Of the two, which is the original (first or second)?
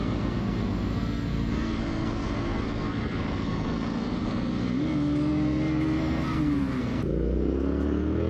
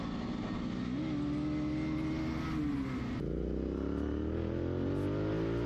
second